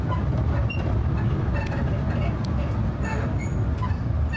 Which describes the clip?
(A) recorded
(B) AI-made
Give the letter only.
A